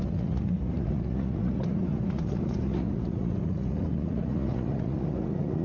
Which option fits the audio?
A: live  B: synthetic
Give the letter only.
B